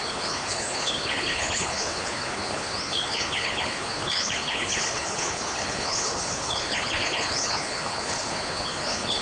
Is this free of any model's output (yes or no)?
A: no